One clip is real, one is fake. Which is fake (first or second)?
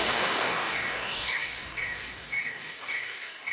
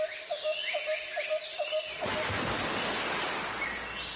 first